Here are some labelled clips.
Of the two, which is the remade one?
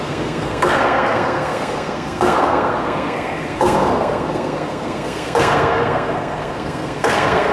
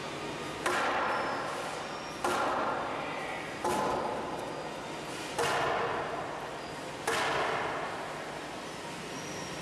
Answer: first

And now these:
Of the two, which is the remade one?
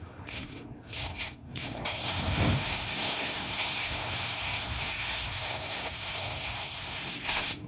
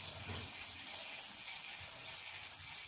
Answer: first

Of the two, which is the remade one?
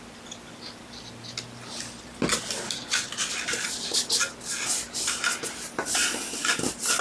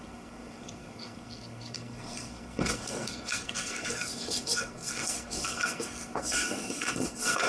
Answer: second